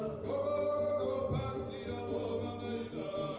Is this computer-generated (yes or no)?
no